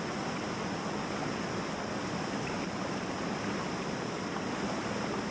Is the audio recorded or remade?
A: recorded